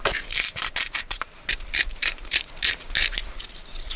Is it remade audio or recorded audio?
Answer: remade